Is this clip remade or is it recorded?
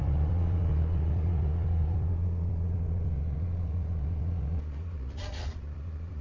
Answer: remade